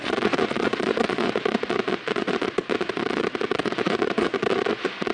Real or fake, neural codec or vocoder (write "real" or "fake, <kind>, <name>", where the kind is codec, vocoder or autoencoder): fake, vocoder, Vocos